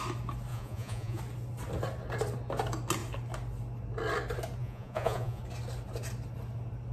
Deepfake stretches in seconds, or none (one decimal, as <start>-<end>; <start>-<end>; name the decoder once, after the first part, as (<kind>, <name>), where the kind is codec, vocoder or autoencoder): 0.5-1.2 (vocoder, Vocos); 4.6-5.4